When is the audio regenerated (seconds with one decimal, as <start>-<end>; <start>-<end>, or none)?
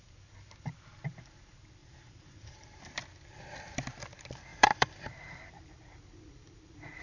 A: 1.8-2.8; 4.5-5.6